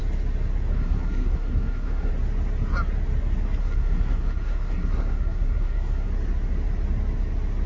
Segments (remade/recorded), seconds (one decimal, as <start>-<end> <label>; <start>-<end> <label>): 0.0-0.7 recorded; 0.7-2.1 remade; 2.1-3.6 recorded; 3.6-6.1 remade; 6.1-7.7 recorded